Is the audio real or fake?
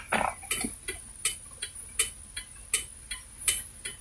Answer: real